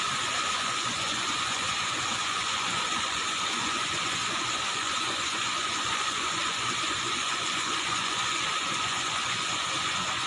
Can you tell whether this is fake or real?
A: fake